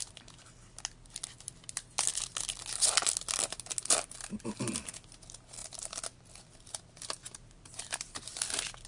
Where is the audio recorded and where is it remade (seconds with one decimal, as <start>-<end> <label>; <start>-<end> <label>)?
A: 0.0-5.6 recorded; 5.6-8.4 remade; 8.4-8.9 recorded